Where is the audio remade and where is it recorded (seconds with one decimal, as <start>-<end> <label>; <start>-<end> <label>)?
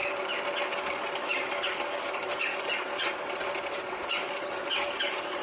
0.0-0.7 recorded; 0.7-2.9 remade; 2.9-4.1 recorded; 4.1-5.4 remade